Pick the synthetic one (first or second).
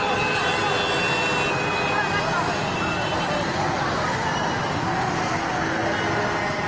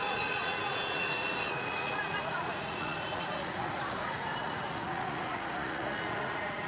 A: second